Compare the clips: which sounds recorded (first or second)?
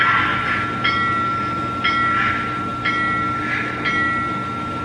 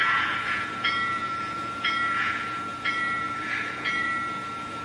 first